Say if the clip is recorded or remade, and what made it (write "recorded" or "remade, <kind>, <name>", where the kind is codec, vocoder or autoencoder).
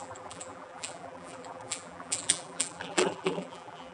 remade, vocoder, BigVGAN v2